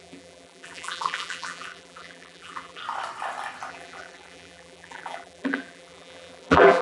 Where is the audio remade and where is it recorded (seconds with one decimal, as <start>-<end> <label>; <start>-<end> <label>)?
0.0-2.8 remade; 2.8-3.7 recorded; 3.7-6.8 remade